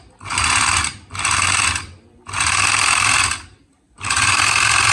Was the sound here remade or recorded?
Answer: recorded